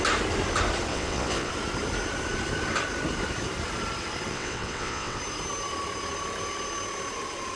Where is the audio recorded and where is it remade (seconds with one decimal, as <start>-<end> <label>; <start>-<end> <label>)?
0.0-0.9 recorded; 0.9-1.5 remade; 1.5-4.3 recorded; 4.3-5.2 remade; 5.2-7.6 recorded